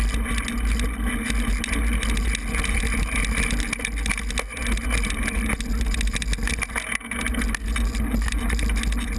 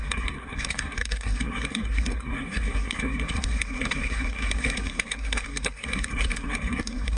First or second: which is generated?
second